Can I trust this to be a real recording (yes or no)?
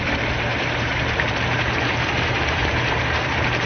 no